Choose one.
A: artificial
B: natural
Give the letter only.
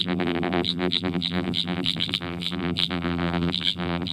A